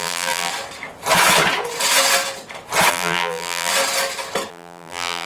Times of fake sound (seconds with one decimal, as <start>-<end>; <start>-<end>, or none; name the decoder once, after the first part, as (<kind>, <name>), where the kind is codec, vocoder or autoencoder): 0.0-0.5 (vocoder, BigVGAN v2); 2.9-3.7; 4.5-5.3